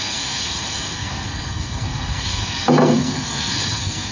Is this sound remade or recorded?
remade